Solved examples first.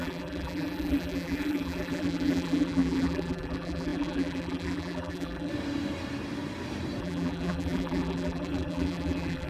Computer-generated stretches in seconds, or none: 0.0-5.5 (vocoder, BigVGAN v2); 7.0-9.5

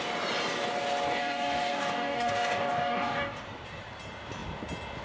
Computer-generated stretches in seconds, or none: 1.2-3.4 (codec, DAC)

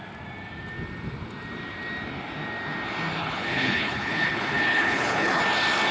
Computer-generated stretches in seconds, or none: 3.2-5.4 (codec, HILCodec)